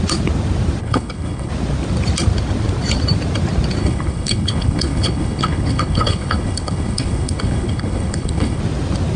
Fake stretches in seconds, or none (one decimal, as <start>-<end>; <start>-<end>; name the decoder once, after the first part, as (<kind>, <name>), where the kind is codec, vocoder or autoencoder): 0.8-1.5 (codec, HILCodec); 3.8-8.6